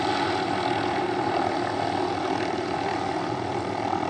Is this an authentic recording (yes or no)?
no